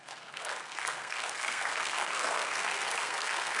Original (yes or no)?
no